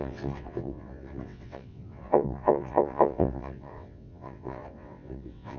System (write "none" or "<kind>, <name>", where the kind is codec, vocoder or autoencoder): vocoder, WaveNeXt